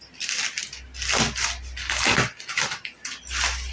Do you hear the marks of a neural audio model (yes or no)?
no